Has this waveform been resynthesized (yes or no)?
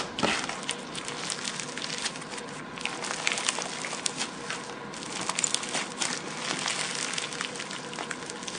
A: no